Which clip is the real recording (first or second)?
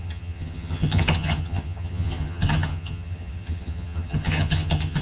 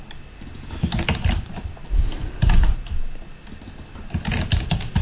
second